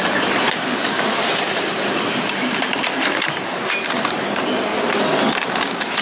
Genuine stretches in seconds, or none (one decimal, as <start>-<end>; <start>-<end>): 4.7-5.3